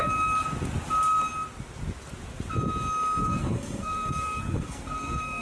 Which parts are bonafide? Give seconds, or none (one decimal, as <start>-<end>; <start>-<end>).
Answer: 0.0-3.2